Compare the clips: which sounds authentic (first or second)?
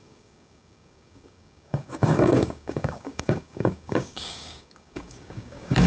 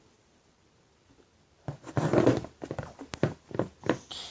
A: second